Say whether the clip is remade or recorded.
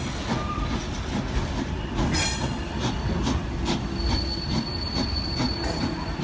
recorded